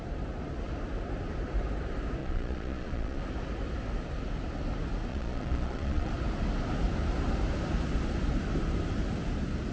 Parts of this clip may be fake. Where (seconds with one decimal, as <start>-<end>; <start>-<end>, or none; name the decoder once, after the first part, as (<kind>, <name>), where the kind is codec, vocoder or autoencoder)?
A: 2.2-3.2 (vocoder, Vocos); 5.1-6.1